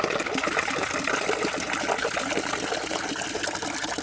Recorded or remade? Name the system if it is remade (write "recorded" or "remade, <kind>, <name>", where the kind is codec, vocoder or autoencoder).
recorded